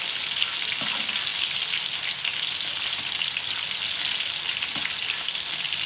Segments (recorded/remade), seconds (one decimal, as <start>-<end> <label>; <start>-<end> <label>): 0.0-5.9 recorded